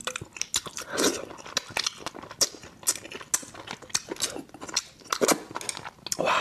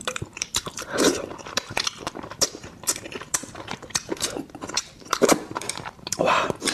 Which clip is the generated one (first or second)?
second